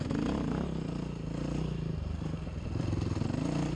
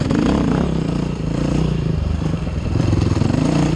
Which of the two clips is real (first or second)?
first